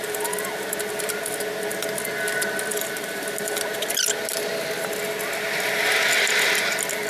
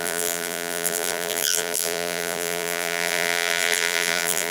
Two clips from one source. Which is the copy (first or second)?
second